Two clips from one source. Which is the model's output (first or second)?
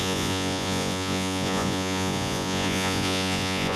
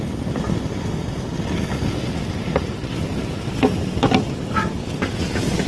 first